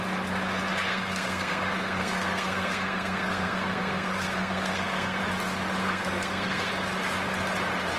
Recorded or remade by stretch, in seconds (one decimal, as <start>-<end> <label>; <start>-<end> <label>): 0.0-0.9 recorded; 0.9-5.2 remade; 5.2-5.8 recorded; 5.8-6.7 remade; 6.7-8.0 recorded

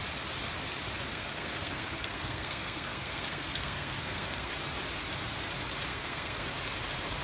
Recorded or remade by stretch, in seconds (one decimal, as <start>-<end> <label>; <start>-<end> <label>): 0.0-1.1 recorded; 1.1-4.5 remade; 4.5-5.9 recorded; 5.9-6.5 remade; 6.5-7.2 recorded

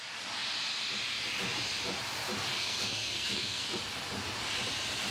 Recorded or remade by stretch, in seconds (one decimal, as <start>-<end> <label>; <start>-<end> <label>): 0.0-2.5 recorded; 2.5-3.8 remade; 3.8-5.1 recorded

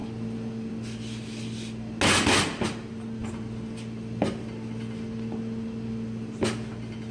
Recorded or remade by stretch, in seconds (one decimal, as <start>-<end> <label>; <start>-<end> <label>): 0.0-7.1 recorded

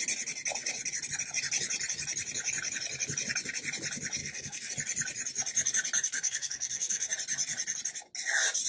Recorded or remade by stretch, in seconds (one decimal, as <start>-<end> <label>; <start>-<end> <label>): 0.0-4.2 recorded; 4.2-4.7 remade; 4.7-6.1 recorded; 6.1-7.1 remade; 7.1-8.7 recorded

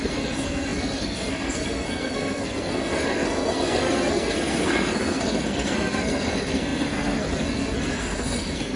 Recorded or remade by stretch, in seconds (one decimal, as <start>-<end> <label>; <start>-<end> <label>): 0.0-8.8 remade